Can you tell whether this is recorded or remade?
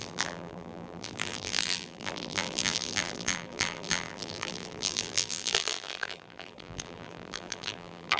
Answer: remade